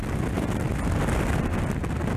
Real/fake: real